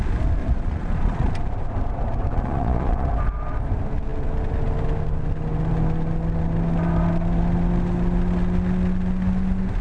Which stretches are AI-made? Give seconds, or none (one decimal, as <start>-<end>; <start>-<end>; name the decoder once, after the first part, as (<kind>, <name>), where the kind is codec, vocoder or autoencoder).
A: 0.4-1.3 (vocoder, Vocos); 2.3-3.1

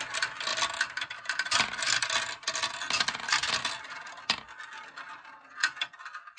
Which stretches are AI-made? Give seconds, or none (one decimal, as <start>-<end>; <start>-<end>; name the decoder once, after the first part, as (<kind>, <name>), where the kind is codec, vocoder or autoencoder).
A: 0.5-1.8 (vocoder, BigVGAN v2)

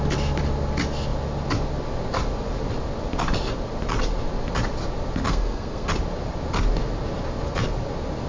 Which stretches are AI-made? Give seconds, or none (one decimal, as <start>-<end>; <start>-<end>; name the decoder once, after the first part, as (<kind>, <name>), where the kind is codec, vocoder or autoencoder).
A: 5.3-5.9 (codec, SNAC)

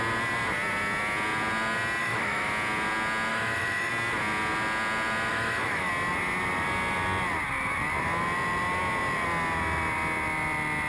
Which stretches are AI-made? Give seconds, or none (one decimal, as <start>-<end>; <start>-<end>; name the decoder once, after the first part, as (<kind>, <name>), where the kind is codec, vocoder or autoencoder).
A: 2.0-2.5 (autoencoder, DAC-VAE); 3.3-3.9; 5.3-5.9

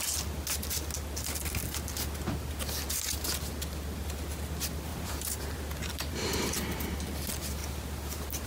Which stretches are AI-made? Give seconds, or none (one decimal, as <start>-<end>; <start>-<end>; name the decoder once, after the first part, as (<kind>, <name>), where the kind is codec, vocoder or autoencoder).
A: 4.9-6.9 (vocoder, BigVGAN v2); 7.6-8.5

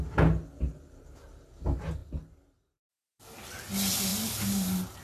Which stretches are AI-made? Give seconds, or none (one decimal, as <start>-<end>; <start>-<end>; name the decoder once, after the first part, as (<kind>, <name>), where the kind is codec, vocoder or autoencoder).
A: none

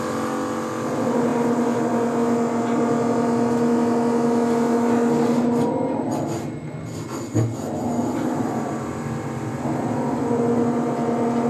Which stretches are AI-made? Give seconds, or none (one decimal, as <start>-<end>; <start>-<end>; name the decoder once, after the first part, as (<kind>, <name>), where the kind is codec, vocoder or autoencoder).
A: none

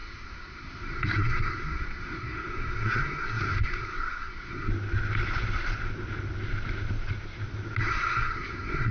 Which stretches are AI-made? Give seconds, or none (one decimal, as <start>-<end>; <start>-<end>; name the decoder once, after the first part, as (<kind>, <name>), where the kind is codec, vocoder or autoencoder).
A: 0.0-4.7 (codec, SNAC); 7.8-8.9